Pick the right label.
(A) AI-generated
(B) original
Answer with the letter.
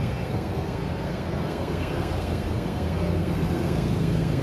A